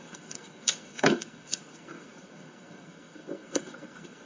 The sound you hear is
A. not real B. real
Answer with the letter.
A